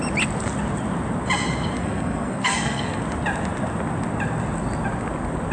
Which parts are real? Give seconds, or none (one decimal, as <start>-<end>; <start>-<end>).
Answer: 0.0-1.8; 3.0-5.5